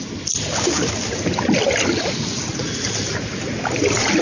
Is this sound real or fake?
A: real